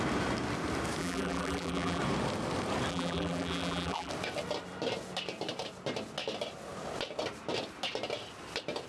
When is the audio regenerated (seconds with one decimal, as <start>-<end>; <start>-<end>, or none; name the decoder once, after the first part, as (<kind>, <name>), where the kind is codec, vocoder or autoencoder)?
1.0-2.0 (vocoder, BigVGAN v2); 2.9-4.1